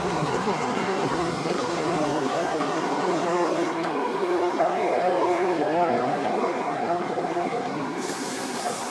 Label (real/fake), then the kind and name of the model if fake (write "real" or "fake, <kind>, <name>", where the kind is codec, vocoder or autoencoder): fake, codec, SNAC